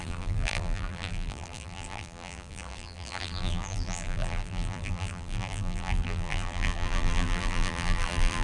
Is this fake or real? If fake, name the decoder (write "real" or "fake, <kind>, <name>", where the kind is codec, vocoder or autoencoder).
fake, vocoder, BigVGAN v2